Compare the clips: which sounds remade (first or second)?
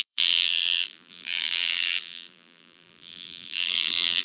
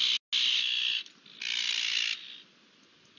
first